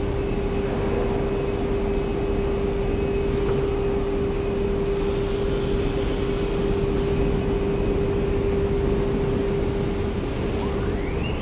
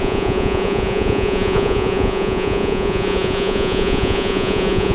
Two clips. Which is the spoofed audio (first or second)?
second